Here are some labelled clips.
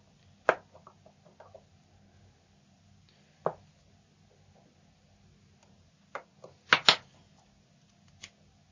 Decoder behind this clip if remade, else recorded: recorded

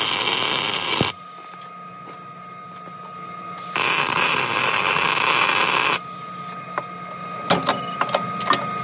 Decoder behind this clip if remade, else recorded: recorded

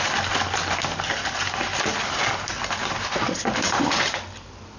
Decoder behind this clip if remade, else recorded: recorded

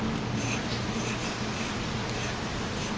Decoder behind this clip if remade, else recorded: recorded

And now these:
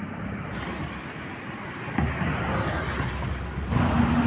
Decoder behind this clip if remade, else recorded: recorded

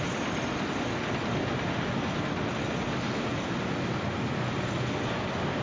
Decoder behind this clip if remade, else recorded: recorded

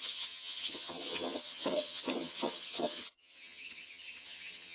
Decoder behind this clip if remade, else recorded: remade, vocoder, HiFi-GAN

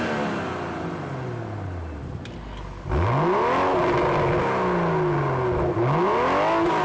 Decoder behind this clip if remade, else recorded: recorded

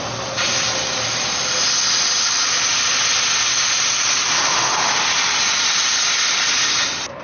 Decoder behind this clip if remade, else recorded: recorded